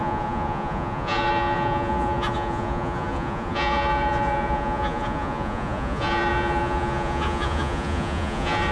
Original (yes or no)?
no